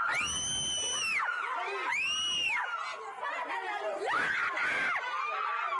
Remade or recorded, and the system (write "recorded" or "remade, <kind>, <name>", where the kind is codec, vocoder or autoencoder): recorded